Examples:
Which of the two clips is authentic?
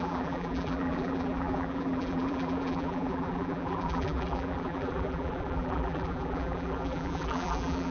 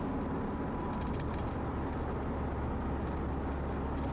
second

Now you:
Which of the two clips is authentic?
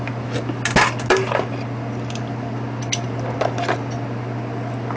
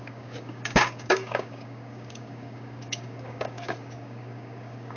first